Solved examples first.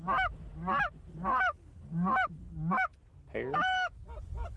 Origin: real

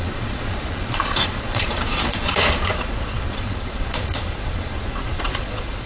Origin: fake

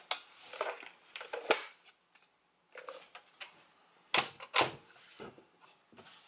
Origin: real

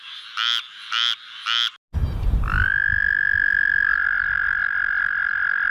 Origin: real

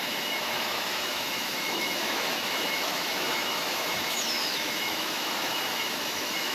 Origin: fake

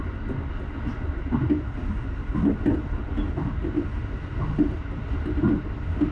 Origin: real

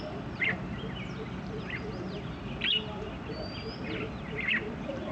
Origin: real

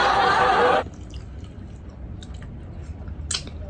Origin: real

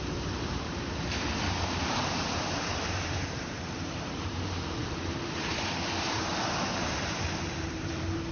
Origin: fake